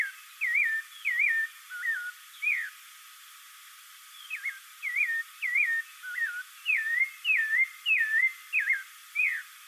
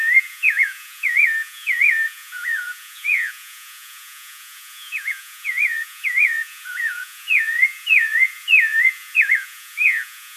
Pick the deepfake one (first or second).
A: second